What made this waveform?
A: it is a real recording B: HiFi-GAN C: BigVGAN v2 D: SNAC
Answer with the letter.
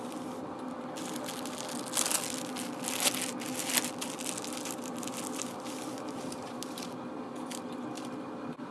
A